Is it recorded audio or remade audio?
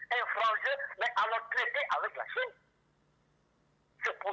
recorded